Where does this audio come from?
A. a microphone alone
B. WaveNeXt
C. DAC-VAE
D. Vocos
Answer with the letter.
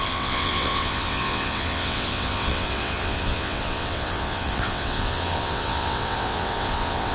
B